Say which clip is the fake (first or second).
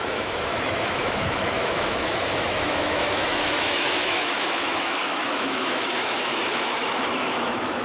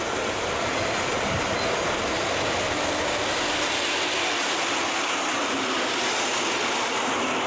first